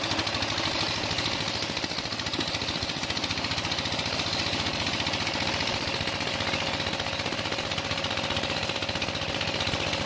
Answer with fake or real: real